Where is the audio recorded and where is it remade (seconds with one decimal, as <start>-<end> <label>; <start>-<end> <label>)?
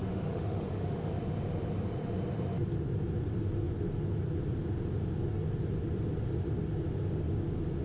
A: 0.0-1.1 remade; 1.1-7.8 recorded